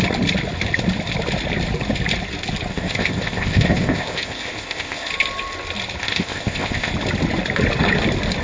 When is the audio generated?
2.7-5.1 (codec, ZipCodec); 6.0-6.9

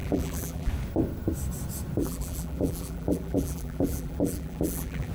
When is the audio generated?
0.0-0.7 (vocoder, BigVGAN v2); 2.0-5.1

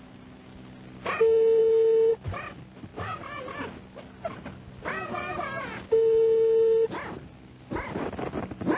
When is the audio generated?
none

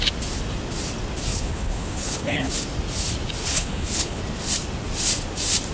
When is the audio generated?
1.3-2.5 (codec, HILCodec); 3.4-4.2

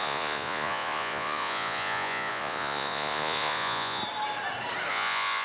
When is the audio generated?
0.0-4.0 (vocoder, Vocos); 4.9-5.4

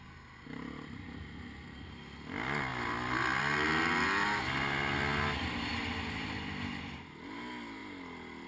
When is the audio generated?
none

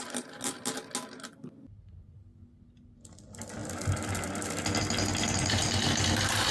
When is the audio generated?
none